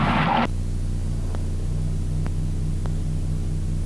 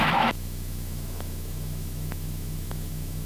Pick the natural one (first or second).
first